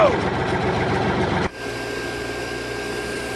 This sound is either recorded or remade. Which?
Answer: recorded